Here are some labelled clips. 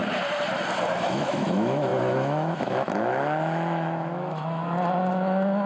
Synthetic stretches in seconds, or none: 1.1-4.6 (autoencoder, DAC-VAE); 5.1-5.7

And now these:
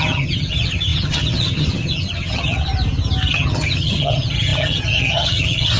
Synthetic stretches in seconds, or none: 0.0-2.7 (vocoder, HiFi-GAN); 3.3-5.8

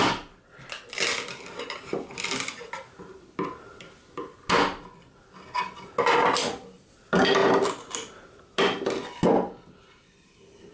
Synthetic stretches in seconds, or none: 7.4-7.9 (vocoder, BigVGAN v2)

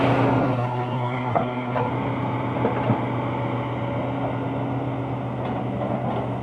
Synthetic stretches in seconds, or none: 0.4-1.9 (codec, SNAC)

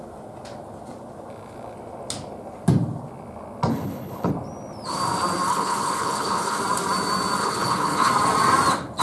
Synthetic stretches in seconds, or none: 3.7-4.3 (codec, HILCodec); 5.5-6.6; 7.4-8.1

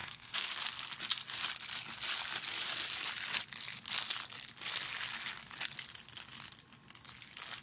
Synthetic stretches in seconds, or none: 0.0-0.6 (codec, SNAC)

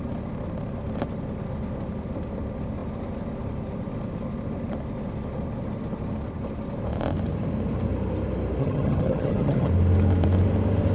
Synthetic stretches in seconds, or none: 8.6-9.7 (vocoder, HiFi-GAN)

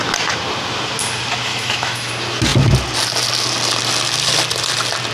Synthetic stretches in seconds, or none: 1.5-2.1 (autoencoder, DAC-VAE)